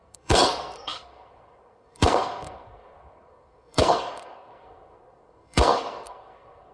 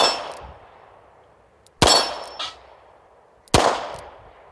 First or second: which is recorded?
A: second